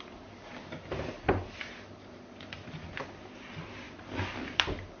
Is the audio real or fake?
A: fake